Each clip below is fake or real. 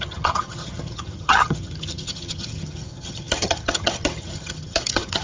fake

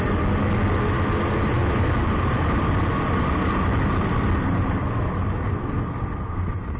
real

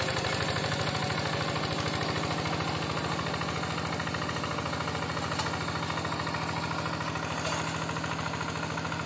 real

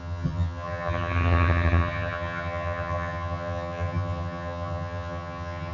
fake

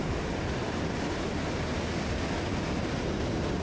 real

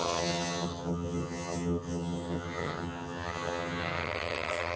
fake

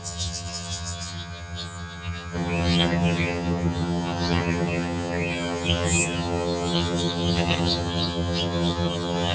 fake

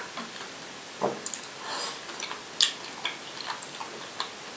real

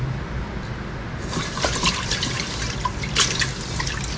real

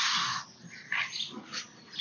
real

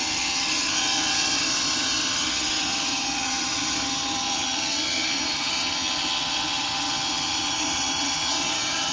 fake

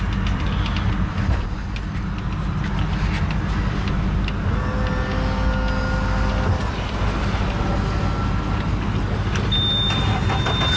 real